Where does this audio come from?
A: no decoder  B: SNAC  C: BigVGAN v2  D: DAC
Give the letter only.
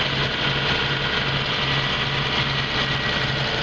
A